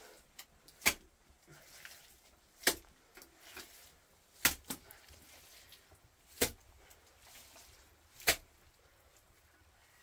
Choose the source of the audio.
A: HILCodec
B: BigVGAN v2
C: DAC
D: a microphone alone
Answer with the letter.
D